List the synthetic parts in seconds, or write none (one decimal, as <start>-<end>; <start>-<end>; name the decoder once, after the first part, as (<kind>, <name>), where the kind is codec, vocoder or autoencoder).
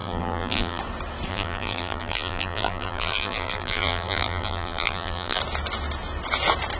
0.0-0.8 (vocoder, BigVGAN v2); 1.3-5.4